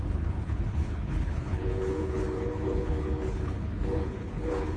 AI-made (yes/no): yes